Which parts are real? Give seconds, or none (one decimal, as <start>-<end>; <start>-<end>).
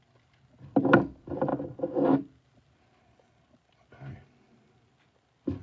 0.0-5.6